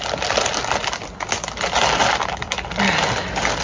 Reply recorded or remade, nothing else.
recorded